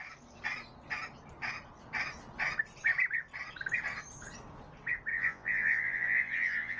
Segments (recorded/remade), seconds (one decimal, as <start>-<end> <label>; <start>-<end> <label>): 0.0-5.1 recorded; 5.1-6.8 remade